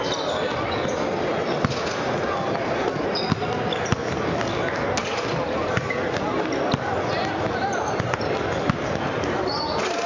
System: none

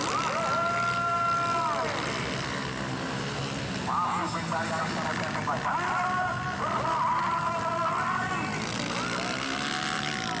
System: none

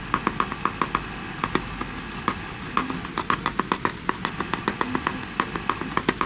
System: none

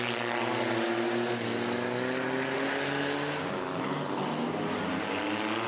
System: none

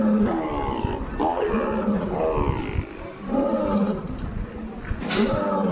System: none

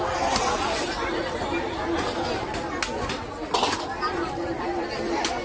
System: none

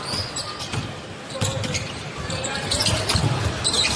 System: vocoder, BigVGAN v2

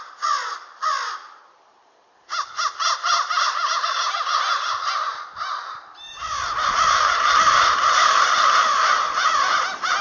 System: none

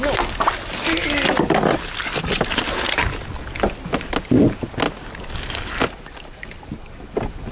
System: none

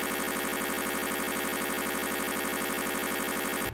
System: none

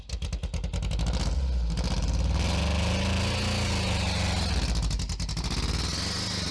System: none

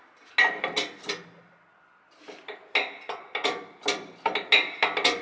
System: none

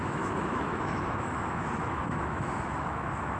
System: autoencoder, DAC-VAE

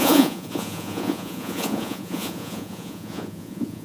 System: vocoder, Vocos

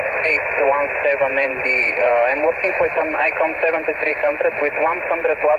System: vocoder, BigVGAN v2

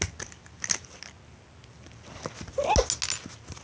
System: none